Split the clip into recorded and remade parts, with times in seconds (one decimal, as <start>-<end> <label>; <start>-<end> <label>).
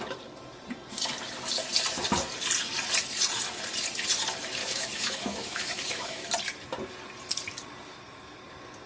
0.0-4.6 recorded; 4.6-6.3 remade; 6.3-8.9 recorded